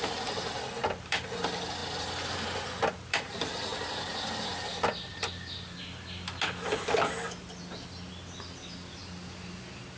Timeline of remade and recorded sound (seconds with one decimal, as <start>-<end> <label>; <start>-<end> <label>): 0.0-1.8 remade; 1.8-2.3 recorded; 2.3-3.7 remade; 3.7-4.3 recorded; 4.3-5.1 remade; 5.1-8.1 recorded; 8.1-9.0 remade; 9.0-9.6 recorded; 9.6-10.0 remade